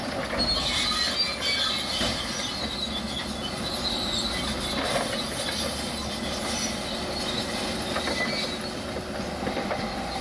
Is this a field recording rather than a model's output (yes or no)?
yes